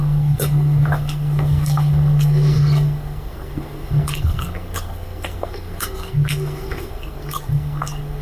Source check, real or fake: fake